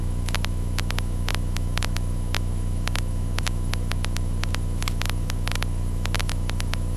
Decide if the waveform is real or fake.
fake